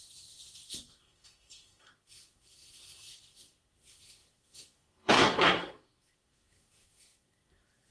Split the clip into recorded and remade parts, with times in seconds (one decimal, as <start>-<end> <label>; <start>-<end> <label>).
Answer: 0.0-7.9 remade